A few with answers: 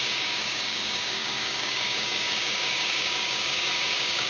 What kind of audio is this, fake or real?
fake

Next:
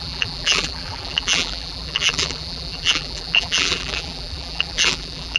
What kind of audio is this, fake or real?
fake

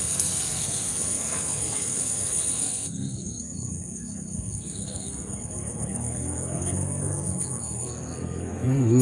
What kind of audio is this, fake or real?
fake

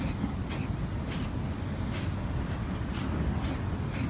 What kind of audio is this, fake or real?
real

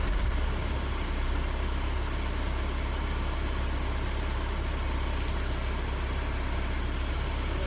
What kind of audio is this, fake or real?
real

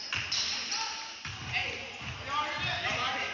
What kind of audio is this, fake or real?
real